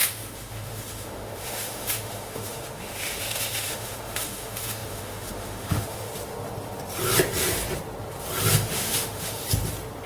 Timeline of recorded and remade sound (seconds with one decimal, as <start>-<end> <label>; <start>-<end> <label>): 0.0-6.1 remade; 6.1-8.5 recorded; 8.5-9.4 remade; 9.4-10.1 recorded